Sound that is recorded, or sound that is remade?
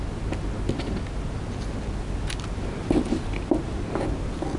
recorded